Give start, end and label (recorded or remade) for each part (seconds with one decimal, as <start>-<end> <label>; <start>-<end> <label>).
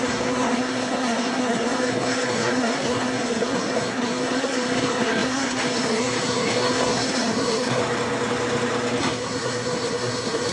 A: 0.0-7.8 remade; 7.8-9.0 recorded; 9.0-10.5 remade